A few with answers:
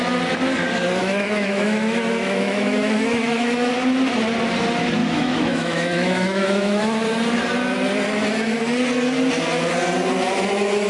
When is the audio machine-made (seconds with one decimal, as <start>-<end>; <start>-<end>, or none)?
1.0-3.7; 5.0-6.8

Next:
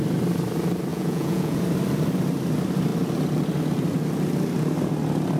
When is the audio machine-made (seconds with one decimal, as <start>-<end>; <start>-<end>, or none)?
0.9-1.6

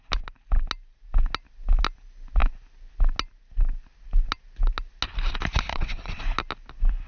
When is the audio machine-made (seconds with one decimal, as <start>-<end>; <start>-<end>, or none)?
5.7-6.2

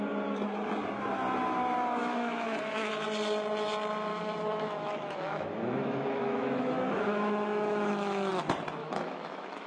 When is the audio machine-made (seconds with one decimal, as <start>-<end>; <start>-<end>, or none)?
2.0-2.9; 4.1-8.3; 8.8-9.7